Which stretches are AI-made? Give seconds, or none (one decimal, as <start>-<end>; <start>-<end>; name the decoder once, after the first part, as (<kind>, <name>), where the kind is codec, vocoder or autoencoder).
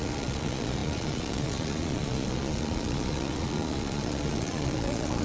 0.0-5.2 (vocoder, Vocos)